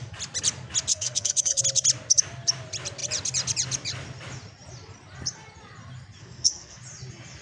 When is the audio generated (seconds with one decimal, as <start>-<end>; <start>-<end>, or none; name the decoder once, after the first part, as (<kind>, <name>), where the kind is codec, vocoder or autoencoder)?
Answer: 0.9-1.6 (codec, SNAC); 6.2-6.8

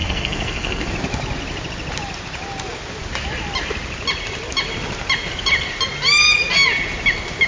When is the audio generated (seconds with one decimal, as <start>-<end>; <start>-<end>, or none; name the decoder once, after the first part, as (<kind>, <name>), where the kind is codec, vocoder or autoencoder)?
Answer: 0.0-0.9 (codec, SNAC)

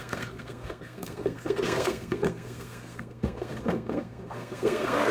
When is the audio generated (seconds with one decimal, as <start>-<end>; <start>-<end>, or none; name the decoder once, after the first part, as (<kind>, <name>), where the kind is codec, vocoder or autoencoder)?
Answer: 0.0-5.1 (codec, SNAC)

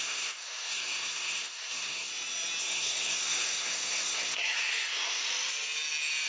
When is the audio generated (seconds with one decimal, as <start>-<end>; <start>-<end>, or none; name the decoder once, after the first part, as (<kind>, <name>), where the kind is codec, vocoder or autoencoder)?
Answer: 0.0-2.1 (codec, SNAC); 2.6-5.2

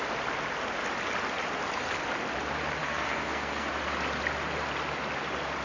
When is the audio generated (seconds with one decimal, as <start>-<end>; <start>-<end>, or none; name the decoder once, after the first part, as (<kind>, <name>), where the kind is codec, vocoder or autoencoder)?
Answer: 2.8-3.7 (codec, SNAC)

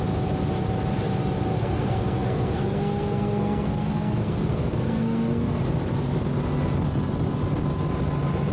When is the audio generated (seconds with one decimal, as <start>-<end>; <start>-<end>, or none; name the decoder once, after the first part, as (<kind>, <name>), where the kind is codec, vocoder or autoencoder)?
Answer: 1.5-5.6 (codec, SNAC)

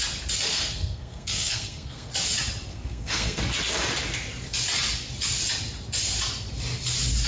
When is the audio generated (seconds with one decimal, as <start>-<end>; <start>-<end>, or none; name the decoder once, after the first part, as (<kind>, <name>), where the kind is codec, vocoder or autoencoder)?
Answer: 0.5-2.1 (codec, SNAC); 2.7-3.4

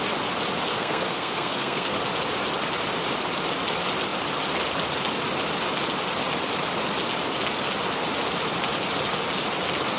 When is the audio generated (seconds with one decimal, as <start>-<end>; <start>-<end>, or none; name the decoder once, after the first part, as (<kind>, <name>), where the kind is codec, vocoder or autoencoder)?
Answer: 0.7-2.0 (codec, SNAC)